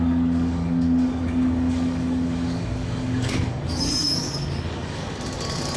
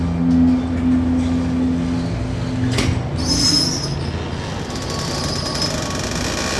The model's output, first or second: first